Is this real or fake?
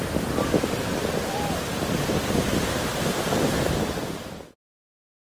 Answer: real